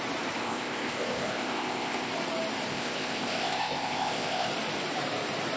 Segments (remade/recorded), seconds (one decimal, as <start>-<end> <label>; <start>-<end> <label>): 0.0-0.4 recorded; 0.4-2.1 remade; 2.1-2.7 recorded; 2.7-4.5 remade; 4.5-5.6 recorded